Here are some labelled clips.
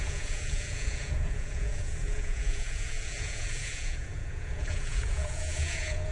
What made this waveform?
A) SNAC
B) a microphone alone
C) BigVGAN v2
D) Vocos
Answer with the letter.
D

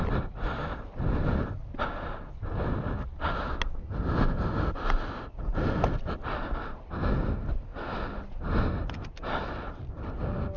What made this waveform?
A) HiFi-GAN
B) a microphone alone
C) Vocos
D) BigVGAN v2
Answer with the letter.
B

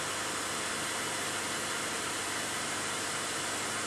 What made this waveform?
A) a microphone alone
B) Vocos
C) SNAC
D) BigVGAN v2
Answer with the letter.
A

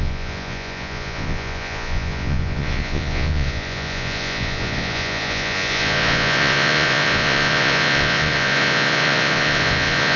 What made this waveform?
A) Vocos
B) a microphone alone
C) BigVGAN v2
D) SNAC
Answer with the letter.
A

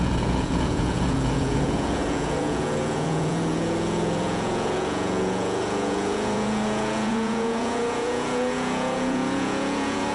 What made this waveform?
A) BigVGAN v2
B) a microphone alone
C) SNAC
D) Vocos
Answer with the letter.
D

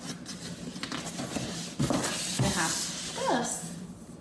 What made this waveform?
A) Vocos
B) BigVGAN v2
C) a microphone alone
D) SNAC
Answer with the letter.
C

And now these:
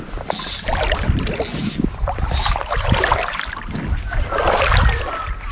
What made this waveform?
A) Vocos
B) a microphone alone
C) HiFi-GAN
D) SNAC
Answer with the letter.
B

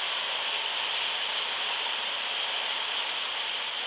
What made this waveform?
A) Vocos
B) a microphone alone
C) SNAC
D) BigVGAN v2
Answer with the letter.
B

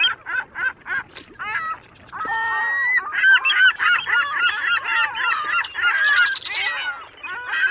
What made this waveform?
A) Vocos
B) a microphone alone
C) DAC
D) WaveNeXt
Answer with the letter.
B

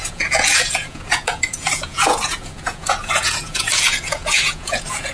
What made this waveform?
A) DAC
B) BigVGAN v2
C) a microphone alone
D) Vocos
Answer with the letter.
D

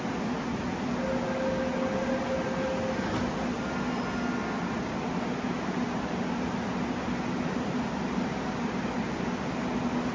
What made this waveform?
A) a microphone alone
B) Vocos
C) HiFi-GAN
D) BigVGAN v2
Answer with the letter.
A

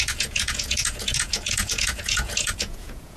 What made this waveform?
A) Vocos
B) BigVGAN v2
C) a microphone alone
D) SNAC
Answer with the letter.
A